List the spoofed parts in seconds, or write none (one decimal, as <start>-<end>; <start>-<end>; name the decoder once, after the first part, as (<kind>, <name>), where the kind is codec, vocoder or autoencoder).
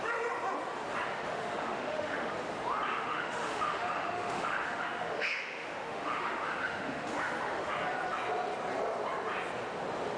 1.1-2.3 (autoencoder, DAC-VAE); 2.9-7.7